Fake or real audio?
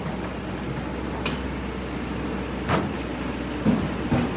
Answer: real